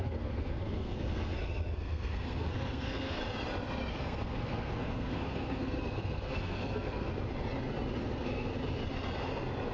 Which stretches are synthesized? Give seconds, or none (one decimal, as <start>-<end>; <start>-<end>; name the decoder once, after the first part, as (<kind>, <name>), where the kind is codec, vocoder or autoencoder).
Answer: 0.0-3.2 (codec, SNAC); 3.9-7.1; 8.0-8.5